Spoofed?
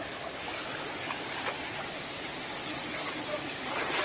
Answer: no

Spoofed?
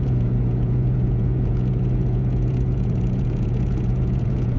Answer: yes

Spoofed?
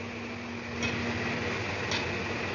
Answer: no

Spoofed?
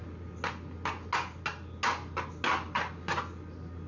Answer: no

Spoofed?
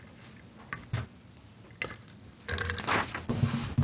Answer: no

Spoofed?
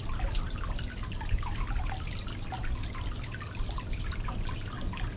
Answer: no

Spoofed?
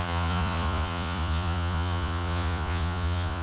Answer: yes